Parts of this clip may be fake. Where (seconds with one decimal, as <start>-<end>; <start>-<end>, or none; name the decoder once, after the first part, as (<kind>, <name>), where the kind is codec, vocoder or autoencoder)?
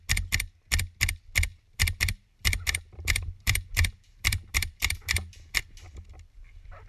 1.5-5.6 (vocoder, BigVGAN v2)